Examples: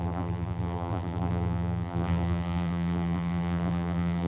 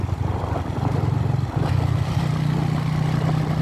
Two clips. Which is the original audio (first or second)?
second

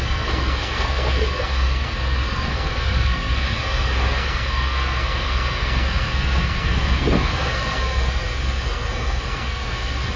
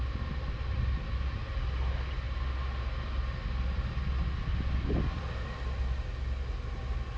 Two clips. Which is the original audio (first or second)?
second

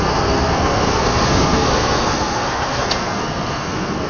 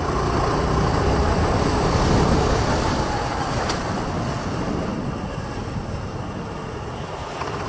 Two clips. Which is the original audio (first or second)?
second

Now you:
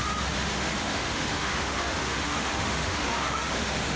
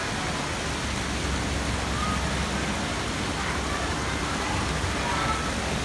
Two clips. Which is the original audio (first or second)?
second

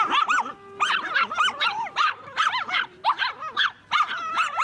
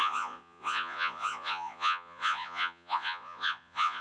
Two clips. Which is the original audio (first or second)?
first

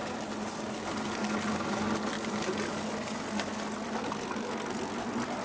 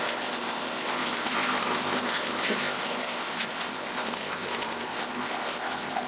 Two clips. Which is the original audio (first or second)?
first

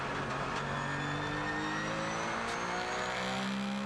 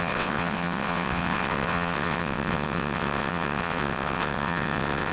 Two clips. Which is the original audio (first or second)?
first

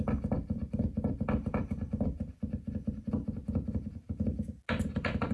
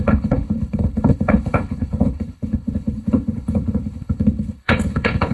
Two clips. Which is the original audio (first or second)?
first